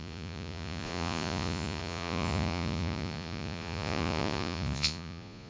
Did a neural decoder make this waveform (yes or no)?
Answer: yes